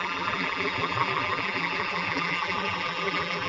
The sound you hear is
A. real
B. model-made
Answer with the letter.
B